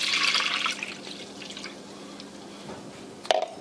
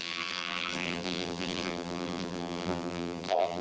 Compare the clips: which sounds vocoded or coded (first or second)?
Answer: second